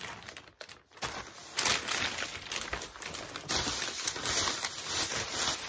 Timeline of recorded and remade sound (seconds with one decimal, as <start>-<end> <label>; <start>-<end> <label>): 0.0-5.7 recorded